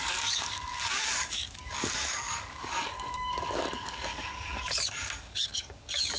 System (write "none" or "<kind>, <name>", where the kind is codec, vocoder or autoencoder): codec, DAC